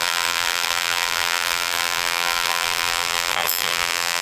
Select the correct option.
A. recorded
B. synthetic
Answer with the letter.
B